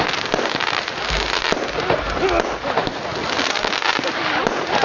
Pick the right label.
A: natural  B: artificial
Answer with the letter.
A